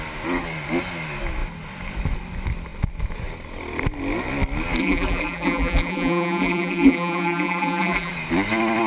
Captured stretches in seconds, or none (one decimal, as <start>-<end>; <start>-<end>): 0.0-4.8; 8.1-8.9